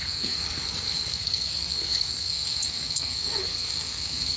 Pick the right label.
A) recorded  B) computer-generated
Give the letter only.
B